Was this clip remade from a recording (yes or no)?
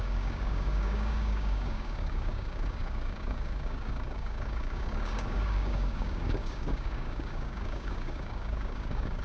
yes